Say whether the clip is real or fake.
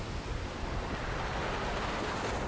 real